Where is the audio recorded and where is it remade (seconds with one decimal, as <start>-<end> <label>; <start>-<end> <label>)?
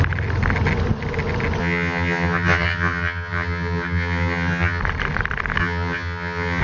0.0-1.6 recorded; 1.6-4.8 remade; 4.8-5.6 recorded; 5.6-6.6 remade